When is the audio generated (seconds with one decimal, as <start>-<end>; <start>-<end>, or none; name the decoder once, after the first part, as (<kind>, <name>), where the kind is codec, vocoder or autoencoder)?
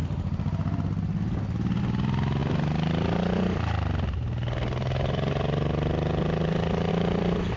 none